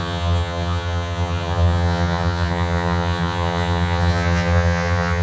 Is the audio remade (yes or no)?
yes